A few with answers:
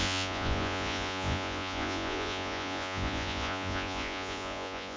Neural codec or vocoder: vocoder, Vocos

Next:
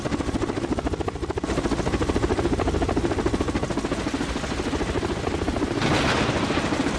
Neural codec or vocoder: none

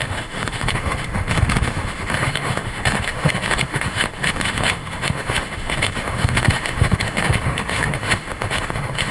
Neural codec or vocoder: autoencoder, DAC-VAE